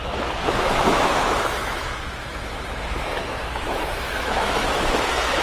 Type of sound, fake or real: fake